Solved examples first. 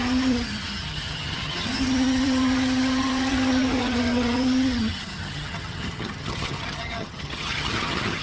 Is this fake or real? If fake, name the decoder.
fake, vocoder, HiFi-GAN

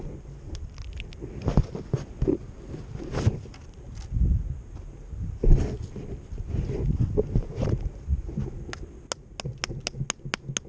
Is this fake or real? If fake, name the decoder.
real